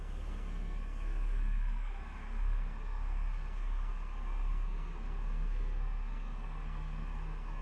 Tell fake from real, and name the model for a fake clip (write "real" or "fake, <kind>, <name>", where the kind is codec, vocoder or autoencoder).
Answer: fake, codec, SNAC